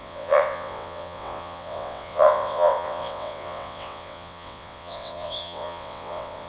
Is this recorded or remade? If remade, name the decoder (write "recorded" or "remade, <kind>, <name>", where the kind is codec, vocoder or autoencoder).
remade, vocoder, WaveNeXt